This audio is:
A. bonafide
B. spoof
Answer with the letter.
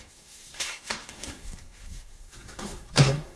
B